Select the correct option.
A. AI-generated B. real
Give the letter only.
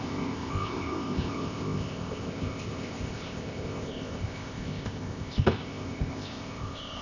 A